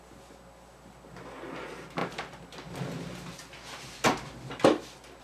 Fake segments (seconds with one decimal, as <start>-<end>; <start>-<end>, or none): none